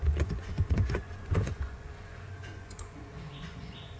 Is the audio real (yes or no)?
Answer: no